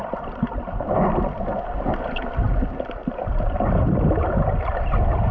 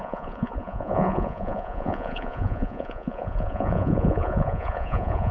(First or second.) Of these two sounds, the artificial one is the second